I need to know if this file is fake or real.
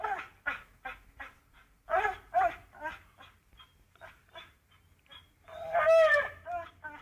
real